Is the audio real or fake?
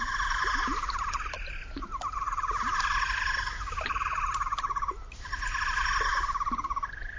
real